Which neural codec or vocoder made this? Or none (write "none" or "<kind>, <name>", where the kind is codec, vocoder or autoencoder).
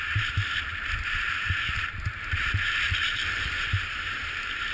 vocoder, BigVGAN v2